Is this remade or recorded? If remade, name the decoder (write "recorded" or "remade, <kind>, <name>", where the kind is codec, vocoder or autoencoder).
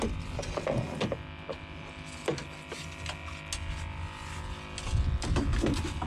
recorded